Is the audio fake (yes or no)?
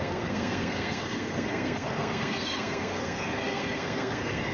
yes